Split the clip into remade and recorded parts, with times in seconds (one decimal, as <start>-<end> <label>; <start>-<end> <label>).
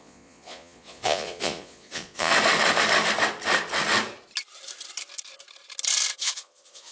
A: 0.0-2.3 remade; 2.3-6.2 recorded; 6.2-6.9 remade